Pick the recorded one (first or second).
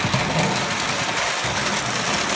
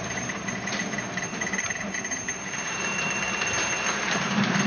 first